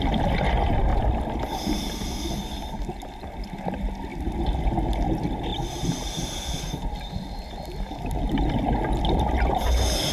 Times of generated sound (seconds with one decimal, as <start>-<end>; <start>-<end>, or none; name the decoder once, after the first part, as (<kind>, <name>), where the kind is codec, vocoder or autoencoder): none

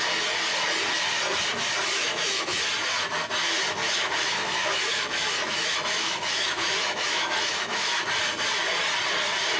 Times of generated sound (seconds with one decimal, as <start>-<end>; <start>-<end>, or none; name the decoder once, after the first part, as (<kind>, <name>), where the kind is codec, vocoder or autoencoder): 2.0-2.6 (autoencoder, DAC-VAE); 3.8-8.0